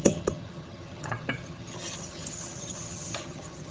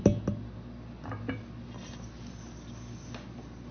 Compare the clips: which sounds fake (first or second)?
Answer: first